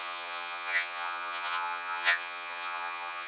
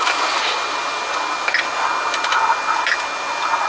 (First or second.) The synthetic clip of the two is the first